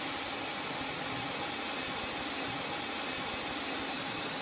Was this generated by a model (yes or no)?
no